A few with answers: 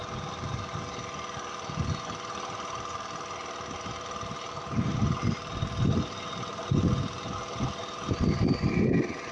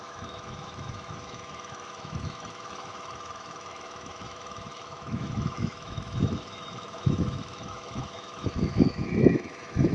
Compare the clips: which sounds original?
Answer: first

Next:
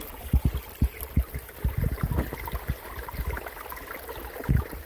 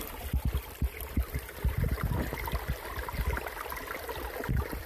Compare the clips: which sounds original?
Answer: first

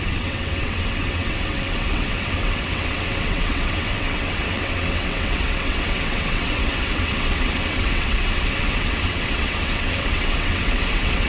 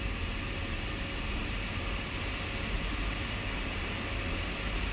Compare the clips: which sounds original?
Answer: second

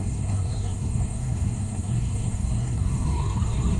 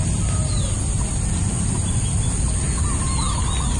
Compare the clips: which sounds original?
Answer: second